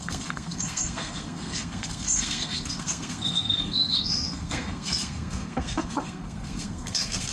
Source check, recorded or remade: remade